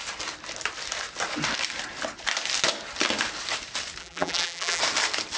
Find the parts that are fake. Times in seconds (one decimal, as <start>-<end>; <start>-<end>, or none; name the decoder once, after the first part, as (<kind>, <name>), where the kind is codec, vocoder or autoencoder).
4.0-4.8 (vocoder, BigVGAN v2)